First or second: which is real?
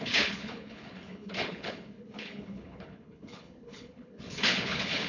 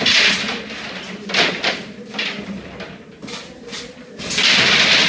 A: second